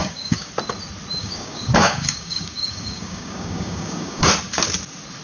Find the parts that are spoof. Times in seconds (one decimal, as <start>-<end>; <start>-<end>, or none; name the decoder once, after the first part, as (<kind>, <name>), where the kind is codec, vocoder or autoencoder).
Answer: 0.0-0.5 (codec, DAC); 1.2-4.3